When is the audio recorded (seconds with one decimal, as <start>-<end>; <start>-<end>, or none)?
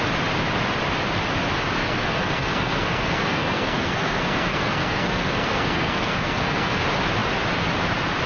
0.0-1.8; 6.8-8.3